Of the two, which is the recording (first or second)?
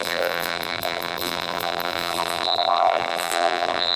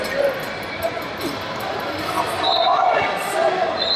second